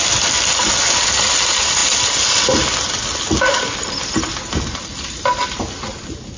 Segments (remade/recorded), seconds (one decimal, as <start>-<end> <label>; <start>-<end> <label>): 0.0-6.4 recorded